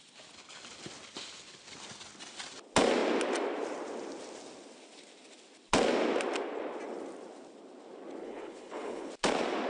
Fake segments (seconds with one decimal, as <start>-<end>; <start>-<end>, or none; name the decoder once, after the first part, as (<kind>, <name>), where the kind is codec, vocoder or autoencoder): 8.2-9.1 (codec, HILCodec)